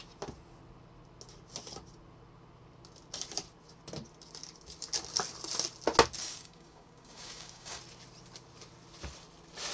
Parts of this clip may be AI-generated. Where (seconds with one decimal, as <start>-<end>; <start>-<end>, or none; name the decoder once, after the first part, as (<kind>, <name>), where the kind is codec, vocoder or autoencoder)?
6.2-7.8 (codec, DAC)